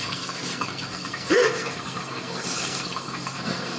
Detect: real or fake fake